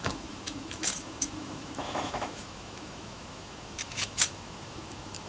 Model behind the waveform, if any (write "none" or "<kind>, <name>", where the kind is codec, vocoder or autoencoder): autoencoder, DAC-VAE